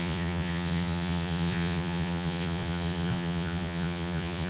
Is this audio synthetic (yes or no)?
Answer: yes